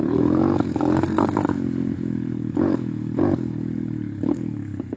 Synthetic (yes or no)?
yes